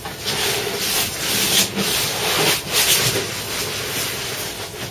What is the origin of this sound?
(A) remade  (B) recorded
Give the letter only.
B